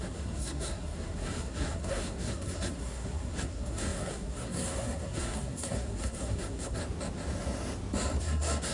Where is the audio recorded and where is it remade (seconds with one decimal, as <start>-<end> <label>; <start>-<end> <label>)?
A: 0.0-6.8 remade; 6.8-8.2 recorded; 8.2-8.7 remade